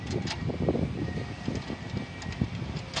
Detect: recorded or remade recorded